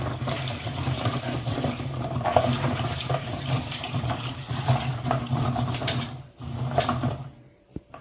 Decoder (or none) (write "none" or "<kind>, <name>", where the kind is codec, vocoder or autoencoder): vocoder, BigVGAN v2